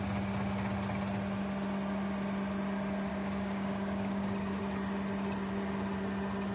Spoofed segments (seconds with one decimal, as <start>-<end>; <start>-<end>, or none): 3.1-4.6